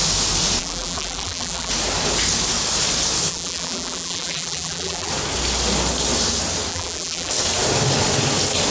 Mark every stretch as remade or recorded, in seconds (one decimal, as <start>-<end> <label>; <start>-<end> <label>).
0.0-0.6 recorded; 0.6-1.7 remade; 1.7-3.3 recorded; 3.3-5.1 remade; 5.1-6.7 recorded; 6.7-7.3 remade; 7.3-8.7 recorded